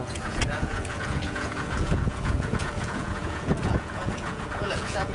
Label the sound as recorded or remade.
remade